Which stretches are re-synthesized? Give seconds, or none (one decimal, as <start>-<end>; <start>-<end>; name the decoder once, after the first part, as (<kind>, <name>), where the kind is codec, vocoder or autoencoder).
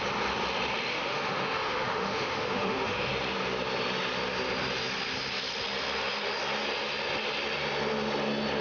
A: 0.9-3.1 (autoencoder, DAC-VAE)